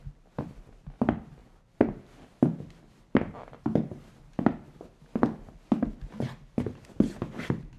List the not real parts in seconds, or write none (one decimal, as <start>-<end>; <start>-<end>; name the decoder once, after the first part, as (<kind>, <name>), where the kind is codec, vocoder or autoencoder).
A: none